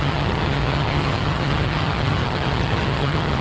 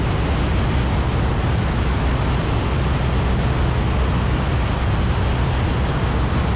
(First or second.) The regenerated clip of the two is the first